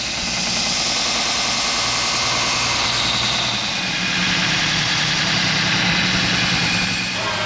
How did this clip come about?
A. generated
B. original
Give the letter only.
B